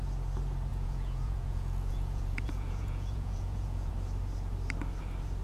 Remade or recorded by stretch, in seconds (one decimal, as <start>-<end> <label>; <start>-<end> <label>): 0.0-0.7 recorded; 0.7-3.9 remade; 3.9-5.4 recorded